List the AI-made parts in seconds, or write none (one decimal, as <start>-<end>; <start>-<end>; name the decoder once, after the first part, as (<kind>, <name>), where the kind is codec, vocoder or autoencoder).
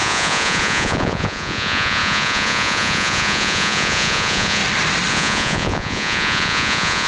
0.0-4.6 (vocoder, Vocos); 5.1-7.1